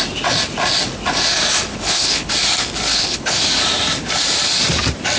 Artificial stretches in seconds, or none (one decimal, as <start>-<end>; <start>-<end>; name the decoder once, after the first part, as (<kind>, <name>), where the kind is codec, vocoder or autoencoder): 1.7-2.3 (codec, HILCodec); 2.9-3.4